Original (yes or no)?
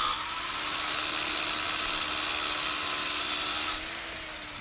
yes